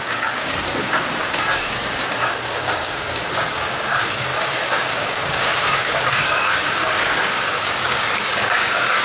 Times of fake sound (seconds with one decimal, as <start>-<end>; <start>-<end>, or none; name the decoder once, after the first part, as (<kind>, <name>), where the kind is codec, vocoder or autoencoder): 0.0-9.0 (codec, DAC)